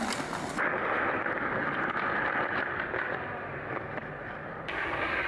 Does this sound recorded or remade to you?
recorded